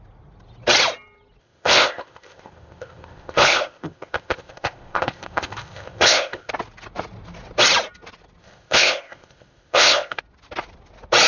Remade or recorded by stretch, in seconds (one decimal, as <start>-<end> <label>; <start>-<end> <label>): 0.0-1.4 recorded; 1.4-6.5 remade; 6.5-8.4 recorded; 8.4-10.2 remade; 10.2-11.3 recorded